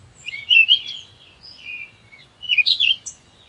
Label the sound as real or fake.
fake